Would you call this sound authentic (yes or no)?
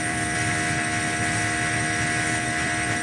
no